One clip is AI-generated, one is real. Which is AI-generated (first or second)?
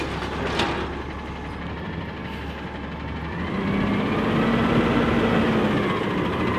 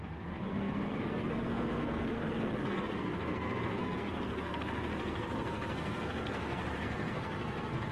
second